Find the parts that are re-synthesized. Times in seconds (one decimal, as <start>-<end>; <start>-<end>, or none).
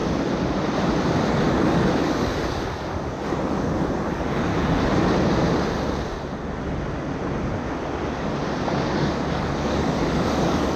1.3-4.5; 8.8-10.8